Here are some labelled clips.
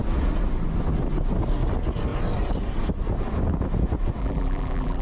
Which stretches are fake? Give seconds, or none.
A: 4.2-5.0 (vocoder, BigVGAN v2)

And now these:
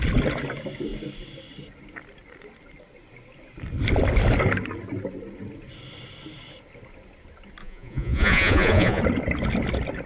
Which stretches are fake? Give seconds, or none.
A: 7.6-9.0 (vocoder, Vocos)

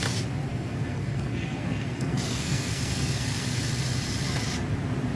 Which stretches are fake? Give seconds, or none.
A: 0.5-3.6 (codec, SNAC)

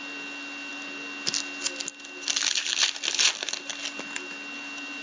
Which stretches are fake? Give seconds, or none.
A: none

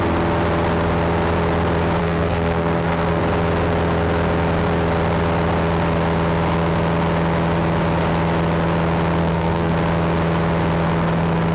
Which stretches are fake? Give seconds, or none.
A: 2.0-3.2 (codec, SNAC); 9.2-9.7

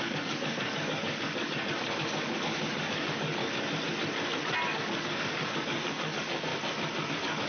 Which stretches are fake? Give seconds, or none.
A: 0.0-3.4 (codec, DAC); 4.7-6.5; 7.1-7.5

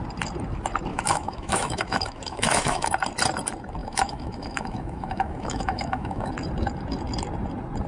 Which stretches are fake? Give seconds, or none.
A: 0.9-2.9 (autoencoder, DAC-VAE); 3.8-6.3